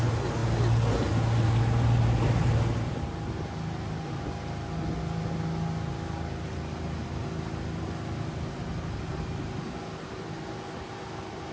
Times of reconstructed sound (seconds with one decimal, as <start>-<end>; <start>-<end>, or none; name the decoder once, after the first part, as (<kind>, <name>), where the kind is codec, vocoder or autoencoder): none